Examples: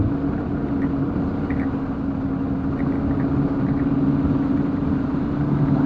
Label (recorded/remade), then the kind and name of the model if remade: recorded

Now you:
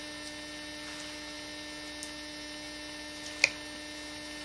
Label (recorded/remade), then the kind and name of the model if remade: recorded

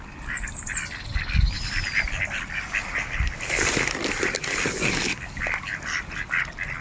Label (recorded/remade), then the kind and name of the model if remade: recorded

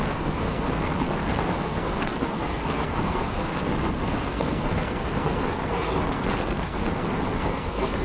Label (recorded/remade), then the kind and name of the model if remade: remade, codec, SNAC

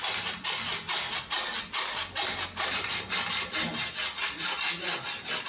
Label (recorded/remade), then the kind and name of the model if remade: recorded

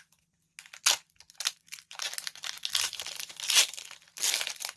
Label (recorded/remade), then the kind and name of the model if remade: recorded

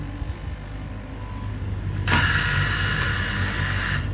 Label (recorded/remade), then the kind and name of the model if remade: recorded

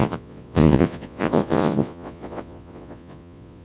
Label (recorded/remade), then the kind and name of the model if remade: remade, vocoder, Vocos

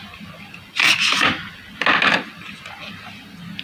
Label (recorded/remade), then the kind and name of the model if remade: recorded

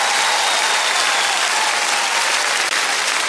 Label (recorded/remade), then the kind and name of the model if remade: recorded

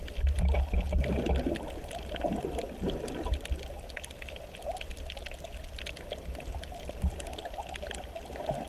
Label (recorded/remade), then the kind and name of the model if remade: recorded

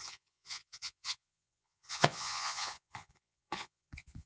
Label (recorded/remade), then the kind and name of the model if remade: remade, vocoder, Vocos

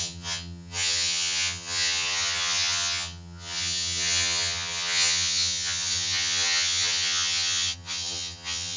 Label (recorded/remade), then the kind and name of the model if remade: remade, vocoder, HiFi-GAN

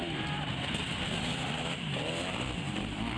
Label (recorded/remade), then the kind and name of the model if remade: remade, vocoder, BigVGAN v2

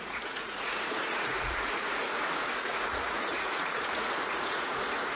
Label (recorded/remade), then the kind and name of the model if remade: remade, vocoder, Vocos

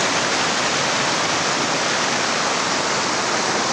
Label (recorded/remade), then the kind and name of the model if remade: recorded